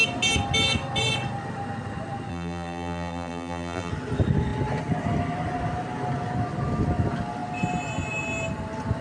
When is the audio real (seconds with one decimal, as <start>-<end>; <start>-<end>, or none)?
0.0-2.3; 3.9-9.0